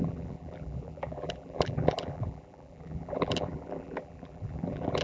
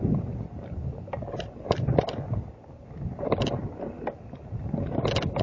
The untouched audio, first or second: second